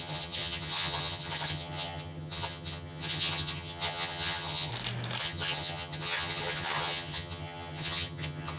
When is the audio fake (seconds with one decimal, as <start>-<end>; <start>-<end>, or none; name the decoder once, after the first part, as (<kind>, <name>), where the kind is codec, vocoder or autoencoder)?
0.0-4.7 (vocoder, HiFi-GAN); 5.2-8.6

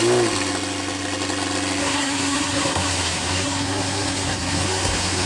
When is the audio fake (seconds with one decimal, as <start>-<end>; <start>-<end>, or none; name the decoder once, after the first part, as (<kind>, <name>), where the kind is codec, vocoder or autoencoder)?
1.8-5.3 (codec, SNAC)

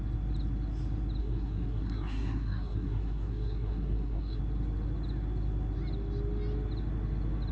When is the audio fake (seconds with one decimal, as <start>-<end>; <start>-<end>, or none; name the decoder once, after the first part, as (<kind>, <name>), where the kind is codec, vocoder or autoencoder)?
1.2-4.4 (codec, SNAC)

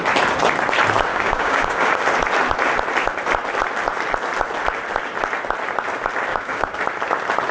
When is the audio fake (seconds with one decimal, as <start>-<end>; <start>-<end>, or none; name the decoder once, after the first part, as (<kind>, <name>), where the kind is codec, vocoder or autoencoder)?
1.1-2.0 (codec, DAC); 6.3-6.8

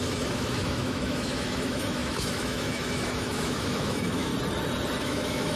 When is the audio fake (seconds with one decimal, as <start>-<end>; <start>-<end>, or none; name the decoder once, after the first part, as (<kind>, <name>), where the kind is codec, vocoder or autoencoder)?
0.0-4.3 (autoencoder, DAC-VAE); 5.0-5.6

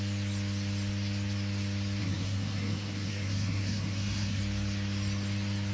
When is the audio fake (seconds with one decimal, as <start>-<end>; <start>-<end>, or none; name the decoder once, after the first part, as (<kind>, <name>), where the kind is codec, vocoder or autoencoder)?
2.0-4.4 (codec, SNAC)

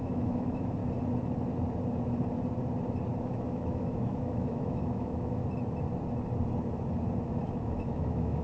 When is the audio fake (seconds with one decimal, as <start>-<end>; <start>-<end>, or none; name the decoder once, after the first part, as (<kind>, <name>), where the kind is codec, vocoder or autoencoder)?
0.0-0.8 (autoencoder, DAC-VAE); 3.2-5.4; 7.3-8.4